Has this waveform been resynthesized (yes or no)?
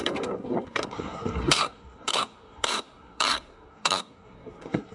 yes